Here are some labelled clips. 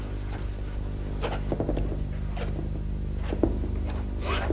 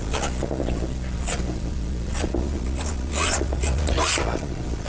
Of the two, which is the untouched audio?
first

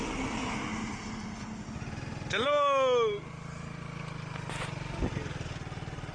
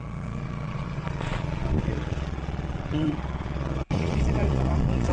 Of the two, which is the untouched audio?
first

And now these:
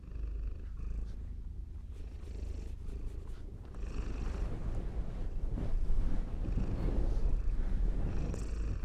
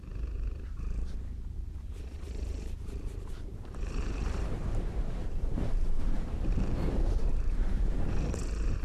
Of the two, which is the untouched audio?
first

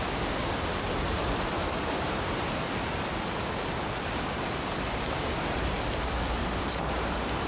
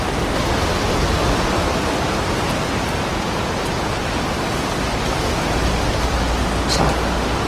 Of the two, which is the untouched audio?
second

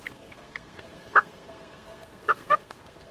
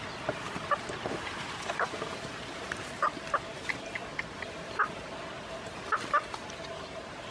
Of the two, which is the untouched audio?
second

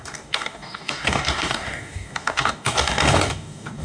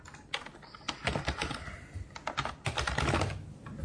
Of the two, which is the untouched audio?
second